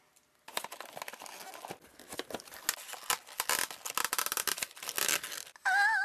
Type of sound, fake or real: real